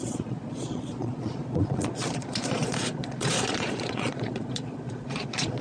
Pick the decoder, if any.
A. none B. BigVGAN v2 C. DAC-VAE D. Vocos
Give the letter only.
D